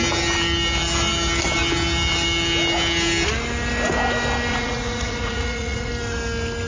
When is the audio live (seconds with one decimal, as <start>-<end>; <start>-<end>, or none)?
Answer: 0.0-4.5; 5.9-6.7